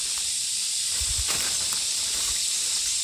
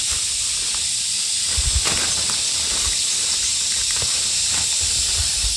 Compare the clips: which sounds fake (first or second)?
first